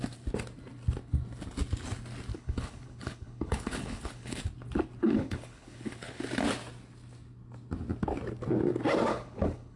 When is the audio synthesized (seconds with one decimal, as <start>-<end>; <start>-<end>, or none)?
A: 2.3-4.4; 5.0-6.2; 9.1-9.8